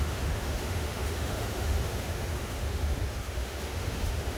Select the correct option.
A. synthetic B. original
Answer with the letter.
A